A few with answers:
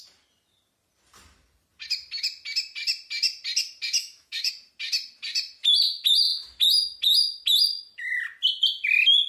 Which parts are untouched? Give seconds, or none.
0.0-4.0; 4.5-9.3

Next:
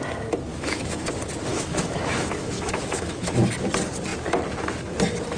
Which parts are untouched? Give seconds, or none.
0.0-0.5; 1.1-1.5; 3.4-5.4

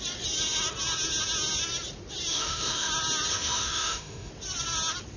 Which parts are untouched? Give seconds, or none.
0.0-2.3; 2.9-3.3; 4.3-5.2

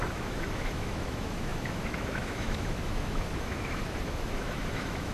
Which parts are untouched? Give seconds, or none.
none

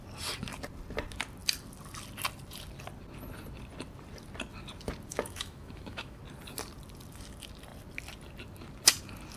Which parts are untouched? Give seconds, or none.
0.0-5.1; 6.2-9.4

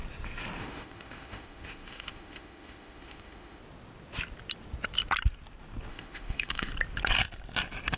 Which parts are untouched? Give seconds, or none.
0.0-0.6; 3.6-5.9; 6.7-8.0

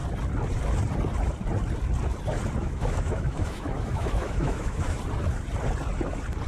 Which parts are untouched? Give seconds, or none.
0.0-2.6; 5.0-6.5